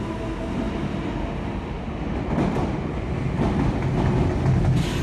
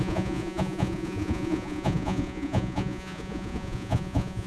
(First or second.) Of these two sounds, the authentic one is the first